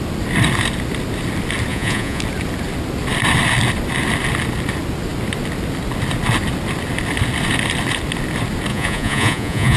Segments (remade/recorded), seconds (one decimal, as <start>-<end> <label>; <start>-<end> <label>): 0.0-1.7 recorded; 1.7-2.2 remade; 2.2-8.7 recorded; 8.7-9.8 remade